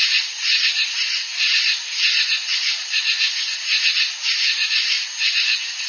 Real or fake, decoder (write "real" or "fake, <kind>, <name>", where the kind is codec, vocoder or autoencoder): real